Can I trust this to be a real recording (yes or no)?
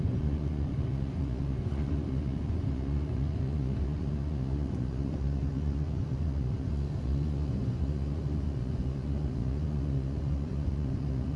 no